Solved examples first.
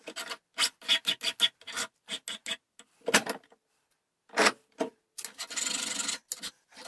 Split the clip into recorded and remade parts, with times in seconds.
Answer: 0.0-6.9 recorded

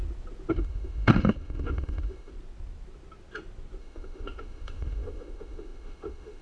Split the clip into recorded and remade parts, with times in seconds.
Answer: 0.0-0.5 recorded; 0.5-2.3 remade; 2.3-3.8 recorded; 3.8-6.4 remade

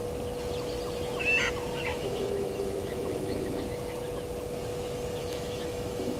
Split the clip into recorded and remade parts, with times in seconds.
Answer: 0.0-1.9 recorded; 1.9-3.6 remade; 3.6-5.2 recorded; 5.2-6.2 remade

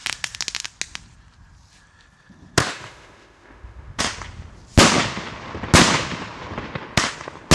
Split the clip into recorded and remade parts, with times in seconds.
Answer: 0.0-2.6 recorded; 2.6-4.0 remade; 4.0-7.5 recorded